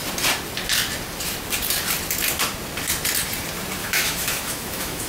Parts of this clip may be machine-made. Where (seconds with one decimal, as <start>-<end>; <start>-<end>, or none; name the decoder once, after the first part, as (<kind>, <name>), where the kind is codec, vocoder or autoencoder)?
3.8-5.1 (autoencoder, DAC-VAE)

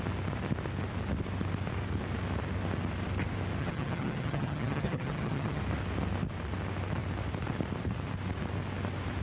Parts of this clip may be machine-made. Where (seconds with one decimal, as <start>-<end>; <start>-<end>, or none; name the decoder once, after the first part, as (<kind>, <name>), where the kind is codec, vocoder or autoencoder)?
3.6-5.6 (vocoder, HiFi-GAN)

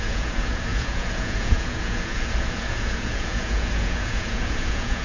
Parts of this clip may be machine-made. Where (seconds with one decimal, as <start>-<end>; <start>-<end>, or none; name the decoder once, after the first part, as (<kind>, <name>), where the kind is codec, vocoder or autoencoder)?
0.0-5.0 (vocoder, Vocos)

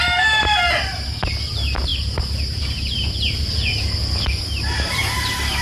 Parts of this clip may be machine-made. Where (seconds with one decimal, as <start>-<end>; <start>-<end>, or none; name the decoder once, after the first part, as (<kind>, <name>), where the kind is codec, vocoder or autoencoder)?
none

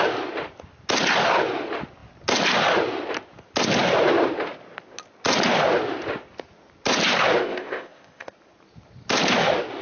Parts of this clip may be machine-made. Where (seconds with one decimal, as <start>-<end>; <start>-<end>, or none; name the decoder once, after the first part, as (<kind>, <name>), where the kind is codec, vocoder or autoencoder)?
7.4-8.3 (codec, ZipCodec)

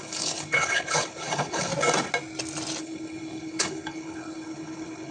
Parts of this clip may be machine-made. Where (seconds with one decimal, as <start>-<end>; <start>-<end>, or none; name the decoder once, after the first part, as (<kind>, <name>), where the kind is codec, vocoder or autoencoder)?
0.0-1.7 (codec, HILCodec); 2.8-5.1